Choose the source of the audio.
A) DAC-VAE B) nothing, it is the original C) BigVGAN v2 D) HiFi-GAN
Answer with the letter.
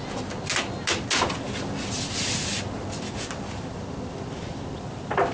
B